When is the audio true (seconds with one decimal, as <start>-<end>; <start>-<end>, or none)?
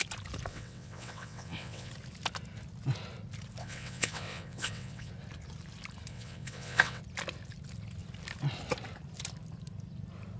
0.0-0.5; 1.9-3.6; 5.1-6.1; 7.0-10.4